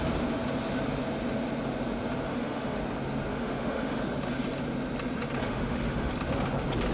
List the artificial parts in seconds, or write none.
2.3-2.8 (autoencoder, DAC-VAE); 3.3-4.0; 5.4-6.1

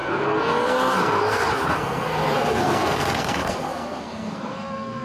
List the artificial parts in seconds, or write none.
0.0-5.0 (codec, SNAC)

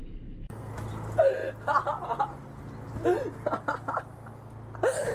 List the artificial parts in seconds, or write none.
0.0-0.7 (codec, SNAC)

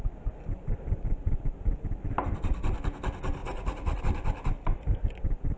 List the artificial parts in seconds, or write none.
3.4-4.0 (vocoder, Vocos)

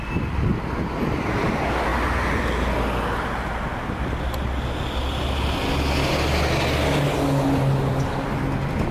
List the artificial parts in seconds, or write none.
none

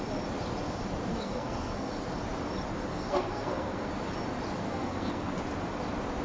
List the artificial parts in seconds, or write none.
1.1-1.9 (codec, SNAC); 2.9-3.9; 4.6-5.3

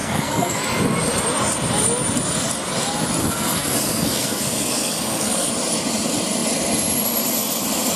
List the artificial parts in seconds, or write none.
0.0-0.6 (codec, SNAC); 3.2-5.5

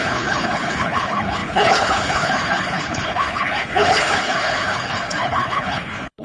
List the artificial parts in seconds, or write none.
0.0-6.2 (codec, HILCodec)